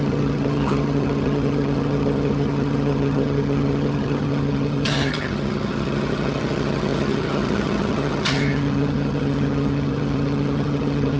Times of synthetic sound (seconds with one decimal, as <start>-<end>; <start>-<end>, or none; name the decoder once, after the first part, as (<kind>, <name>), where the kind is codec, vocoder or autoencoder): 0.0-11.2 (vocoder, HiFi-GAN)